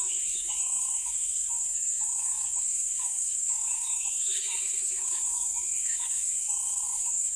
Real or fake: fake